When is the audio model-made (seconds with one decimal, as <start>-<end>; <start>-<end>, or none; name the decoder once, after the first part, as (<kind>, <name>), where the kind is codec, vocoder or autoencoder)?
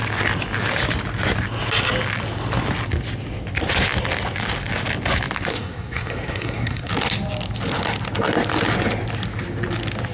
5.5-6.9 (codec, SNAC)